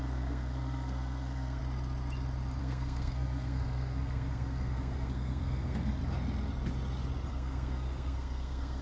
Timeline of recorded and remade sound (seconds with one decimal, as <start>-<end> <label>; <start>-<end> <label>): 0.0-1.6 remade; 1.6-2.6 recorded; 2.6-6.0 remade; 6.0-7.3 recorded; 7.3-8.8 remade